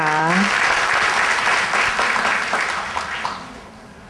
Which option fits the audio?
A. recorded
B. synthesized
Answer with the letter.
A